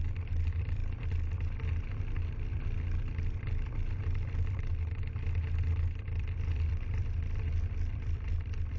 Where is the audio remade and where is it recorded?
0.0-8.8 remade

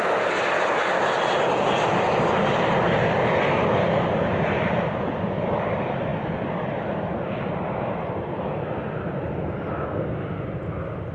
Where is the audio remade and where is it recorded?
0.0-11.1 recorded

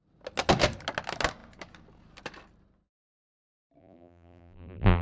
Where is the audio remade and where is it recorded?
0.0-3.8 recorded; 3.8-5.0 remade

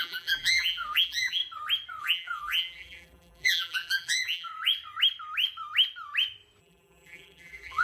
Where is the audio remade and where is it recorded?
0.0-1.4 remade; 1.4-2.0 recorded; 2.0-4.5 remade; 4.5-6.6 recorded; 6.6-7.8 remade